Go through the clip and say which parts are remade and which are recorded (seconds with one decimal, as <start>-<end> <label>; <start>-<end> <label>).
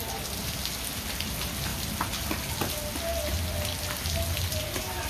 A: 0.0-5.1 recorded